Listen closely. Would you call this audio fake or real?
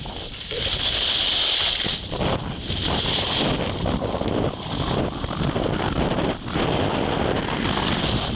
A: real